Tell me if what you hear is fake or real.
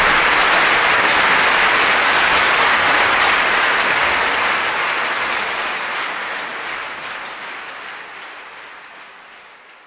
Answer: real